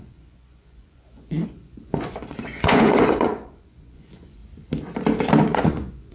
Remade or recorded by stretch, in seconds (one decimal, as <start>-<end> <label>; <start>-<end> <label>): 0.0-4.4 remade; 4.4-5.4 recorded; 5.4-6.1 remade